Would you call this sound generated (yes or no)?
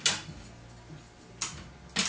no